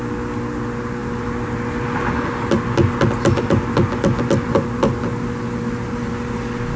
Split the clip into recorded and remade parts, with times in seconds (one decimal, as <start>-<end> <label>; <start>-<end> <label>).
0.0-6.8 recorded